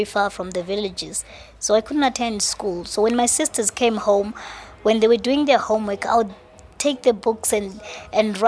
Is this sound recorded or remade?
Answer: recorded